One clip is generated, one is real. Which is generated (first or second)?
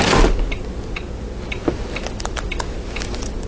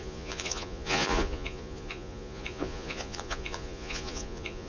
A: second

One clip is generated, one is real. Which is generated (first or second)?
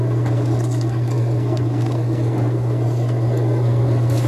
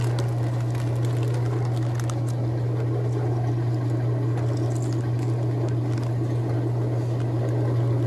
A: first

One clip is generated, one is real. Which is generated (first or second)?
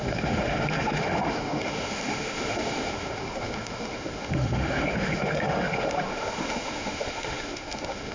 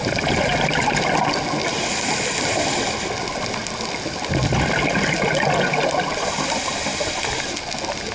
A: first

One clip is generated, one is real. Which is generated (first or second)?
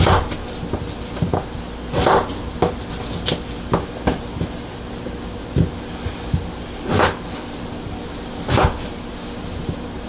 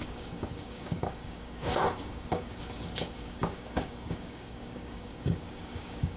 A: second